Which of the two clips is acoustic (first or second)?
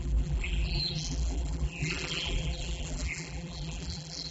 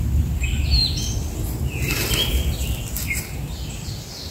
second